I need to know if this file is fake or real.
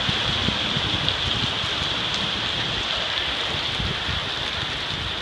real